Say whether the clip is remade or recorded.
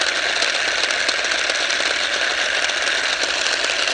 recorded